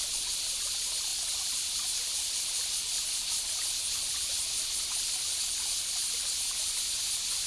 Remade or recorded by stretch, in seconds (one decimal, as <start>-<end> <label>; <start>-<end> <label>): 0.0-1.1 recorded; 1.1-3.8 remade; 3.8-7.5 recorded

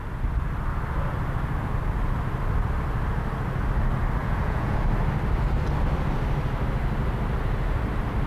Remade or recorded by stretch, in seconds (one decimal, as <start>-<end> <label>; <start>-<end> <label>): 0.0-4.2 recorded; 4.2-4.8 remade; 4.8-8.3 recorded

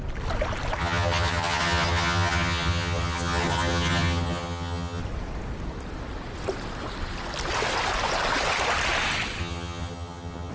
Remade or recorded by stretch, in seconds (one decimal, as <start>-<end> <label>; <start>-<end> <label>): 0.0-0.8 recorded; 0.8-5.0 remade; 5.0-9.4 recorded; 9.4-10.5 remade

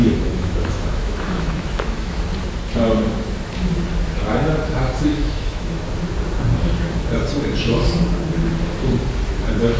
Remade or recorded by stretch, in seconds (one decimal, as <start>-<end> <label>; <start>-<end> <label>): 0.0-2.2 remade; 2.2-5.1 recorded; 5.1-5.8 remade; 5.8-9.8 recorded

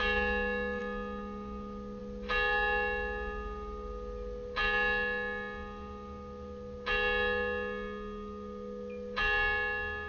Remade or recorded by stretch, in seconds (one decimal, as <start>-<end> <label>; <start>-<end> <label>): 0.0-10.1 recorded

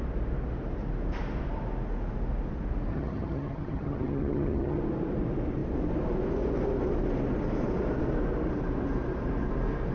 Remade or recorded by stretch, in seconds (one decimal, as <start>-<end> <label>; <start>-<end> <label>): 0.0-2.9 recorded; 2.9-4.8 remade; 4.8-9.9 recorded

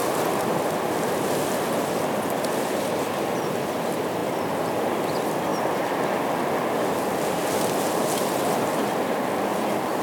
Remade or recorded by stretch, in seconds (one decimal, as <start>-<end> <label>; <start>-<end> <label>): 0.0-9.5 recorded; 9.5-10.0 remade

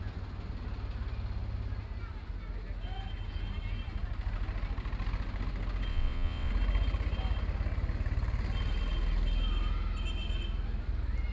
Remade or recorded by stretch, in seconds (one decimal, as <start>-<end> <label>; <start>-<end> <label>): 0.0-5.9 recorded; 5.9-6.5 remade; 6.5-11.3 recorded